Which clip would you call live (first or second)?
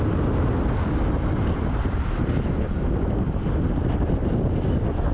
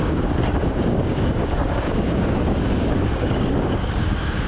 first